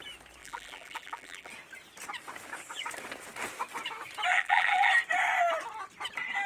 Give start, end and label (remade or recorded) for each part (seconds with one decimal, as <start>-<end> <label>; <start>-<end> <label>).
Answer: 0.0-0.4 recorded; 0.4-1.5 remade; 1.5-4.3 recorded; 4.3-4.9 remade; 4.9-6.5 recorded

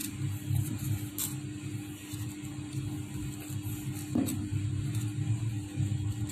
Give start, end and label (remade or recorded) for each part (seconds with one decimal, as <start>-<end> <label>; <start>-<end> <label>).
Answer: 0.0-1.1 remade; 1.1-2.5 recorded; 2.5-3.0 remade; 3.0-6.3 recorded